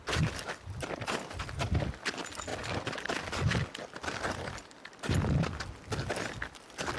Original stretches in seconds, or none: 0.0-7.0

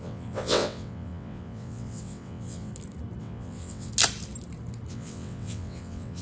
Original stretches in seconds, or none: 2.7-3.2; 3.9-4.9

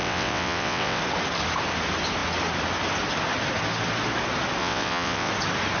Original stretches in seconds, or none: 1.0-4.6; 5.3-5.8